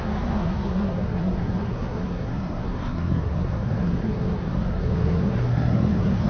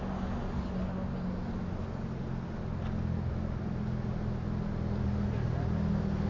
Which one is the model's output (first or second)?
first